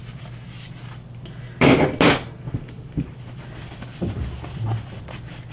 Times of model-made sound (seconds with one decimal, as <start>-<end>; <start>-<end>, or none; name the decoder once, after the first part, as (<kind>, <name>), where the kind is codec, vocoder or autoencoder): none